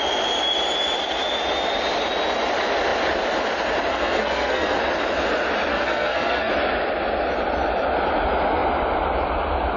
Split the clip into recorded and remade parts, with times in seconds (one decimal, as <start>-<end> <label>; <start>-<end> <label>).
0.0-3.9 recorded; 3.9-4.8 remade; 4.8-5.7 recorded; 5.7-6.5 remade; 6.5-9.8 recorded